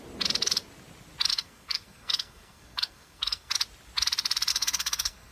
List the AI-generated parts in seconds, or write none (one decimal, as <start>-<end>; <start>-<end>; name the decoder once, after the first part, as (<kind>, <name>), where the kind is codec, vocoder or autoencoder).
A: 1.3-3.5 (codec, SNAC); 4.5-5.3